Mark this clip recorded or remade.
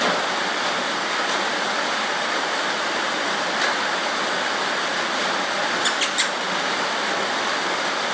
recorded